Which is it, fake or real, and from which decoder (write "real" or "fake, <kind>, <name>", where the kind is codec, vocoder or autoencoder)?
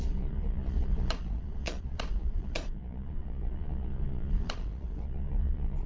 fake, vocoder, Vocos